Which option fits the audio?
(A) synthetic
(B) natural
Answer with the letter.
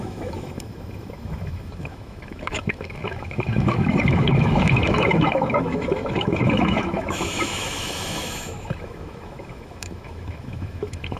A